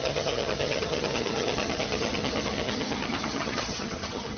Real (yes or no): no